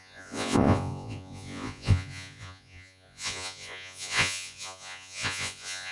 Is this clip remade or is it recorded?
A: remade